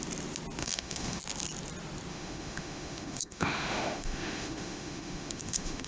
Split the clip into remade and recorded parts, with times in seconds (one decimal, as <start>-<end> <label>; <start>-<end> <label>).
0.0-0.6 recorded; 0.6-1.2 remade; 1.2-2.1 recorded; 2.1-5.9 remade